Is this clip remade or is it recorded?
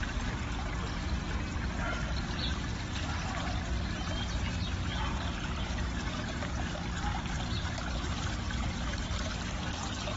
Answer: recorded